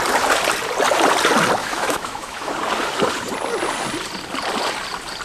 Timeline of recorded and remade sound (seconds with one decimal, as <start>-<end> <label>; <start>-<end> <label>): 0.0-1.6 recorded; 1.6-2.5 remade; 2.5-5.2 recorded